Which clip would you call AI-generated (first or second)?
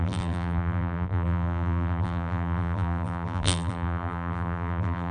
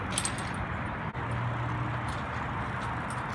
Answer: first